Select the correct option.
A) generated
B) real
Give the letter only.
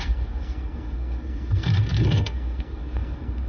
A